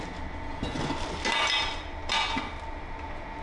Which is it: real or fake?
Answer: real